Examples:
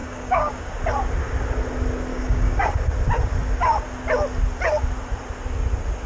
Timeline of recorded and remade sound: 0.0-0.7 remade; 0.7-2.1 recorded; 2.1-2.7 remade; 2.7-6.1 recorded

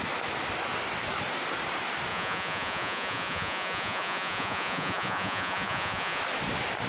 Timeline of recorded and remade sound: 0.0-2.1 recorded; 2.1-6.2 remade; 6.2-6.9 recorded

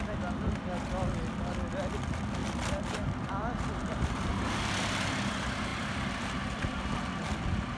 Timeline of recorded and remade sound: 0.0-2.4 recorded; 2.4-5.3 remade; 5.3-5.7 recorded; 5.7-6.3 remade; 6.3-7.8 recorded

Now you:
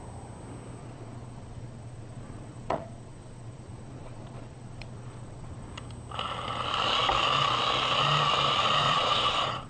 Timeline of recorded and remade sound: 0.0-0.8 recorded; 0.8-5.7 remade; 5.7-8.8 recorded; 8.8-9.7 remade

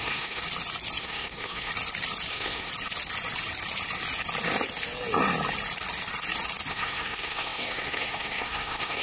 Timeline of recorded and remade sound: 0.0-0.4 remade; 0.4-1.0 recorded; 1.0-1.7 remade; 1.7-2.3 recorded; 2.3-2.7 remade; 2.7-6.7 recorded; 6.7-9.0 remade